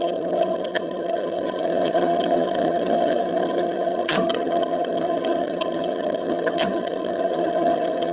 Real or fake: fake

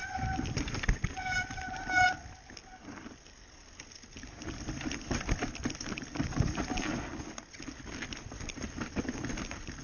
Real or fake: real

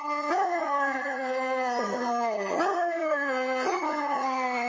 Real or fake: fake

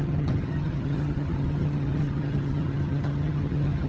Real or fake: fake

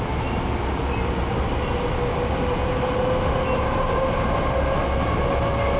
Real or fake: real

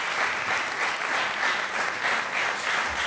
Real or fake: real